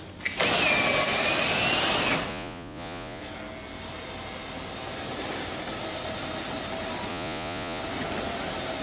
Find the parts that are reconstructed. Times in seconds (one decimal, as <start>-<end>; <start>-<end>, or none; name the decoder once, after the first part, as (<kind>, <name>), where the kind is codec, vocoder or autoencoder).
2.3-3.2 (vocoder, Vocos); 7.1-7.8